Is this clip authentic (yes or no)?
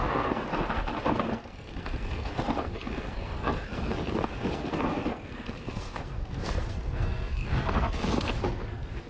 no